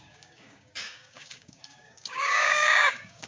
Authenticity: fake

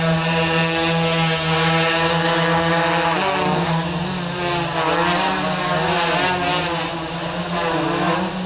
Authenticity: real